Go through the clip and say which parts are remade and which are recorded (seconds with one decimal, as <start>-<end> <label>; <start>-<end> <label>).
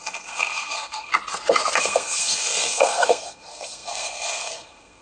0.0-1.1 remade; 1.1-1.8 recorded; 1.8-5.0 remade